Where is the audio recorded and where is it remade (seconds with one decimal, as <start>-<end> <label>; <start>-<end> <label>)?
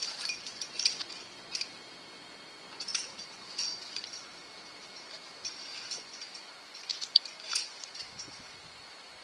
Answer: 0.0-1.5 remade; 1.5-2.5 recorded; 2.5-4.4 remade; 4.4-5.8 recorded; 5.8-9.2 remade